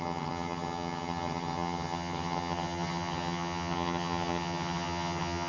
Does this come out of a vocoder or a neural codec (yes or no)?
yes